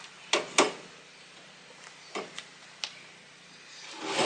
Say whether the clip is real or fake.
real